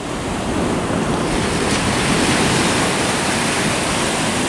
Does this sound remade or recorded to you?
remade